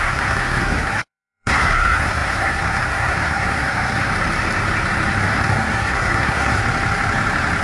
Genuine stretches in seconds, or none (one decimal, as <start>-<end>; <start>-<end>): 4.1-5.2; 6.6-7.6